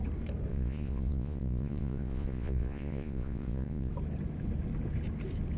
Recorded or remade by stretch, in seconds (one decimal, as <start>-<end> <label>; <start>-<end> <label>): 0.0-0.5 recorded; 0.5-3.9 remade; 3.9-5.6 recorded